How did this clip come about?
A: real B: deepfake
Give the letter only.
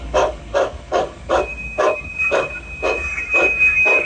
B